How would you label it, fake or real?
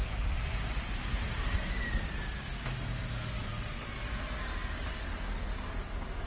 real